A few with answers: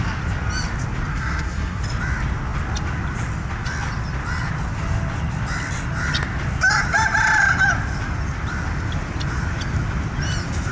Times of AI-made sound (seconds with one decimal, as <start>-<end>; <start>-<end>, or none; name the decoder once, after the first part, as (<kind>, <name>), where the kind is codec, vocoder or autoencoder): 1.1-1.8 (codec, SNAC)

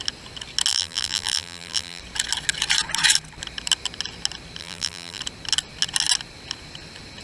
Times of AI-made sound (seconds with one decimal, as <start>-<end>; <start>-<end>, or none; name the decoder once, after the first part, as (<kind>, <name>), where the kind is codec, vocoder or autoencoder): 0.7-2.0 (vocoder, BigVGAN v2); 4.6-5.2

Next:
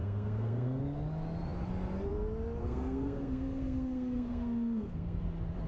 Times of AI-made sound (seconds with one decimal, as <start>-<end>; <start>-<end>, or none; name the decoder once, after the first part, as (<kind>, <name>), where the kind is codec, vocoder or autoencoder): 0.0-0.8 (codec, SNAC); 2.6-5.2